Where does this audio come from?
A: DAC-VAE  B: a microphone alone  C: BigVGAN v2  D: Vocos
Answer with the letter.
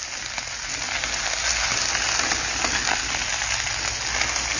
B